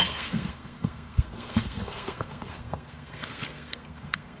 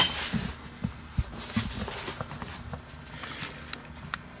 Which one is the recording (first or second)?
second